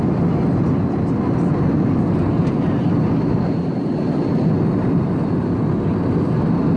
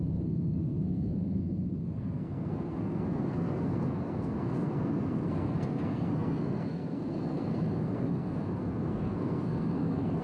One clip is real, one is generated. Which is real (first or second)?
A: first